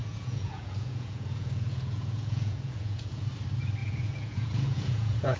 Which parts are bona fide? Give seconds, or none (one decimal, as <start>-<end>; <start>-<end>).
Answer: 3.2-3.8